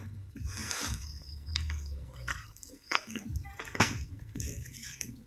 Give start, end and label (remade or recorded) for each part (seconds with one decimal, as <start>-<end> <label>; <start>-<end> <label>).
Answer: 0.0-5.3 remade